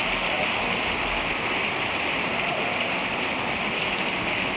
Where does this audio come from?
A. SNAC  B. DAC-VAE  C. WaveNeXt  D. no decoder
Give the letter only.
D